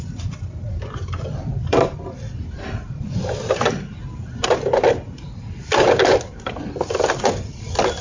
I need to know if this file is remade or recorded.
remade